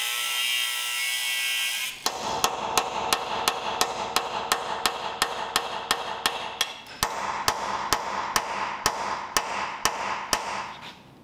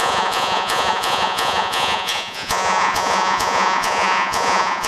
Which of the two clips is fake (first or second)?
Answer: second